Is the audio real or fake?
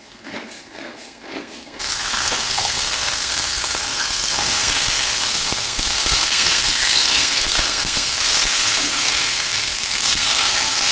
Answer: fake